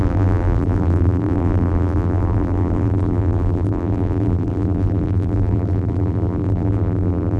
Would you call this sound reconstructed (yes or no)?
yes